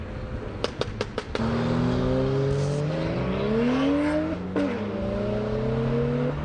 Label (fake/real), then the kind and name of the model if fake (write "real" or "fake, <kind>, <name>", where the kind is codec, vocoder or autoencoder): real